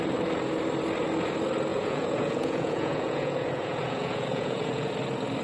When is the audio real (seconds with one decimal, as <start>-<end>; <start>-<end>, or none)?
0.0-1.7; 4.9-5.4